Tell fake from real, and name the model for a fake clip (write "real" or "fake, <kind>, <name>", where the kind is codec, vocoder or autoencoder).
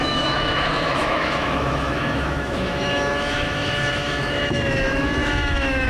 fake, autoencoder, DAC-VAE